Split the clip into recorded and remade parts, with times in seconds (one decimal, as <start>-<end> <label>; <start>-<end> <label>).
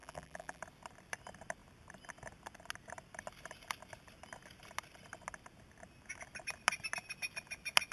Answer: 0.0-0.6 remade; 0.6-7.9 recorded